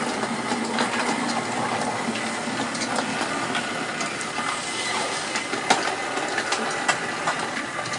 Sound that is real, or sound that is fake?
real